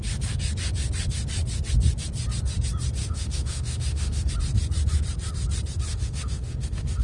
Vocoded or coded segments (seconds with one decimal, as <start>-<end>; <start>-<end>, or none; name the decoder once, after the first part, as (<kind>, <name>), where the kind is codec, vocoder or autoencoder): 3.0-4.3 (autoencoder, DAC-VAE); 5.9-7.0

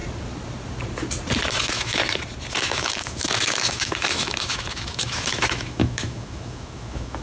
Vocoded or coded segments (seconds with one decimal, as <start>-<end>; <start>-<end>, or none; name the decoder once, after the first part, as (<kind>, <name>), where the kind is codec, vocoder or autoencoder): 1.5-2.0 (autoencoder, DAC-VAE); 2.5-7.2

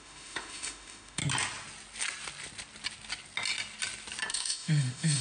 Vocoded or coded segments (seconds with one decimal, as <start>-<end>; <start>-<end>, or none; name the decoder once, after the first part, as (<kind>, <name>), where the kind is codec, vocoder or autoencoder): 0.0-1.2 (autoencoder, DAC-VAE); 4.3-5.2